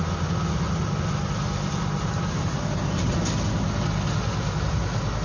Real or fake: real